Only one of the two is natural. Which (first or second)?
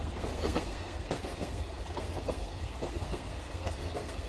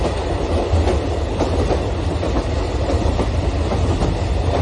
second